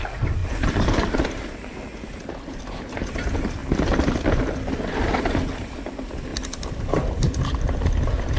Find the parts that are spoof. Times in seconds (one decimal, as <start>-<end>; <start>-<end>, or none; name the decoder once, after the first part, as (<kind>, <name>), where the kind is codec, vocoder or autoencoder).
6.3-7.3 (vocoder, BigVGAN v2)